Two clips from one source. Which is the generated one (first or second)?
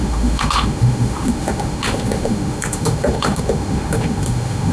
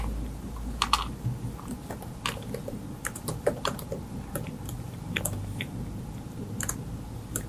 first